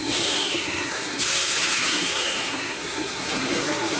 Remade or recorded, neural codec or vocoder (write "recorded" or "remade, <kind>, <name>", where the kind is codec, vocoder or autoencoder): remade, codec, SNAC